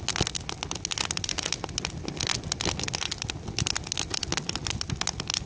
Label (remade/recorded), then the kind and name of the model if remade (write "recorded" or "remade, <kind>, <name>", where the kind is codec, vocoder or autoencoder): recorded